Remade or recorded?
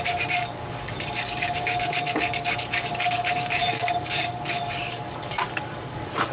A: remade